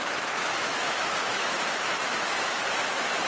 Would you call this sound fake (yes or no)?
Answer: yes